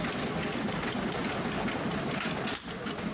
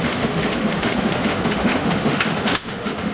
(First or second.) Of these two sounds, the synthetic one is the second